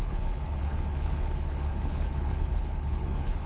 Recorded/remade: remade